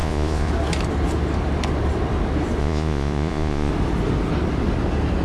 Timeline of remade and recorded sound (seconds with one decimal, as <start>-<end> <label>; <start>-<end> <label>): 0.0-0.5 remade; 0.5-2.6 recorded; 2.6-3.7 remade; 3.7-5.2 recorded